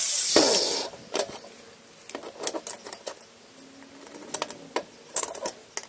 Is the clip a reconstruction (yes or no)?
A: no